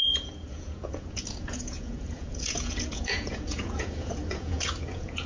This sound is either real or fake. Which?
fake